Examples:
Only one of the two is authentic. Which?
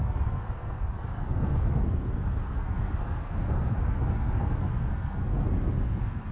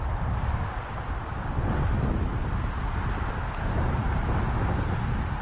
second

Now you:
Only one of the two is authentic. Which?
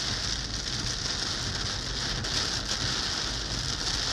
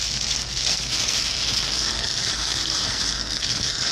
first